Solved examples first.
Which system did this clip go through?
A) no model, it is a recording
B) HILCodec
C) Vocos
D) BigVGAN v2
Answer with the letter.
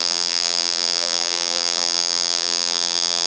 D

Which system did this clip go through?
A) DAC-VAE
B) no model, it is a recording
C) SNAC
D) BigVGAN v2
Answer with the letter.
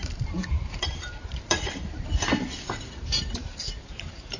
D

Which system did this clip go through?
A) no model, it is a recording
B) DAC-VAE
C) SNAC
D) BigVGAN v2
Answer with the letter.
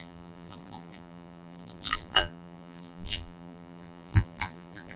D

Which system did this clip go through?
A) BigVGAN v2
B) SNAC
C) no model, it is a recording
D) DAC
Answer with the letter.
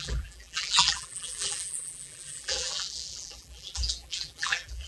A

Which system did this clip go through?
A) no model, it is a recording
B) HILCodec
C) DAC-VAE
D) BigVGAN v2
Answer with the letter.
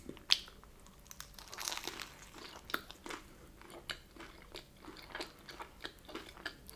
A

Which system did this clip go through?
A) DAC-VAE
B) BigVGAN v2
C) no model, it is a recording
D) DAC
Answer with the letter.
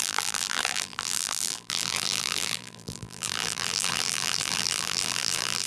B